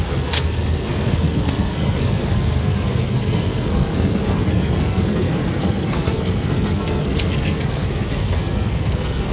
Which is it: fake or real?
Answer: fake